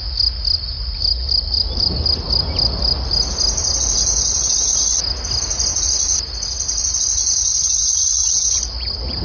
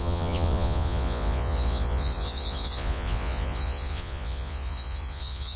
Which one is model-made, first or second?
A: second